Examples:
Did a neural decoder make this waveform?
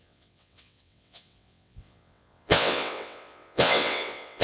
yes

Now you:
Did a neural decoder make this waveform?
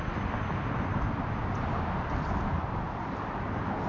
no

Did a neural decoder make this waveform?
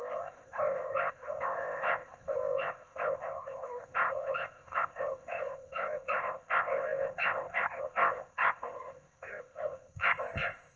yes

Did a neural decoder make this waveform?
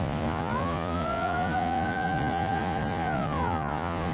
yes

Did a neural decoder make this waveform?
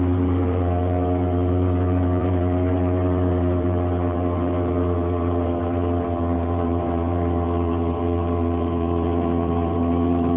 yes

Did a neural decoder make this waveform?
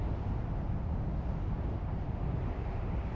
no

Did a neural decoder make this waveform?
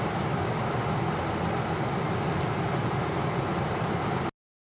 no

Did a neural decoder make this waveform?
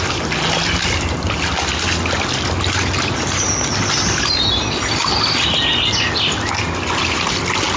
no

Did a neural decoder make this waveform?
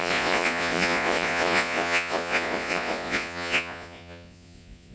yes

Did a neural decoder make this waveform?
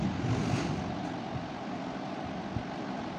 no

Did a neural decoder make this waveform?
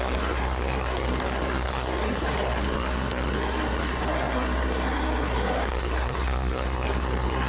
yes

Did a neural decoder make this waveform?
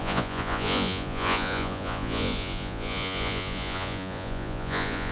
yes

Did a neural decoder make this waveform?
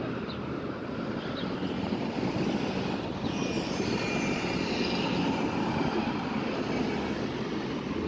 no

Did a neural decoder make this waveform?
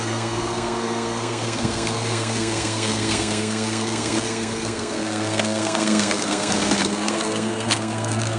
yes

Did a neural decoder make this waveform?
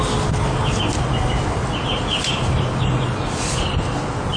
no